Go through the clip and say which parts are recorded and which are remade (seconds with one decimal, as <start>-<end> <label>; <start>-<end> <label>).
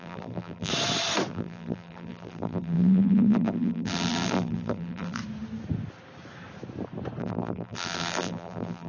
0.0-0.7 remade; 0.7-1.3 recorded; 1.3-5.2 remade; 5.2-7.2 recorded; 7.2-8.9 remade